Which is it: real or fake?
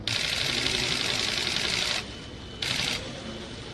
real